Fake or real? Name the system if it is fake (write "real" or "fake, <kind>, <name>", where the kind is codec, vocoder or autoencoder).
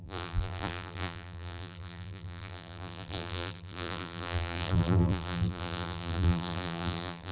fake, vocoder, BigVGAN v2